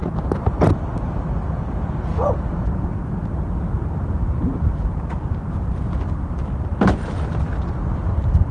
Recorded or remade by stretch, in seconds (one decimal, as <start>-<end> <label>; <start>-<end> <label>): 0.0-4.2 recorded; 4.2-5.9 remade; 5.9-8.5 recorded